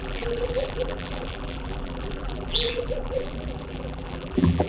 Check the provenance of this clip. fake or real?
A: fake